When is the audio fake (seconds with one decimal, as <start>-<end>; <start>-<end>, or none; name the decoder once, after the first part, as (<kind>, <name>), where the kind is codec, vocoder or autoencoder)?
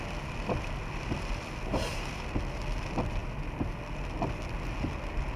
none